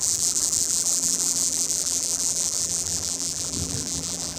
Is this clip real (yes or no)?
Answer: no